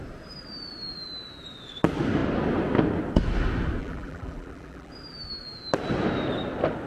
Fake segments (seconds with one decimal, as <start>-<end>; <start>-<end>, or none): 3.8-4.9